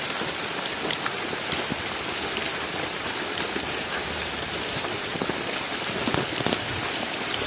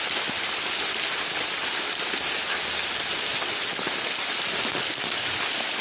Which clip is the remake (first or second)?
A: first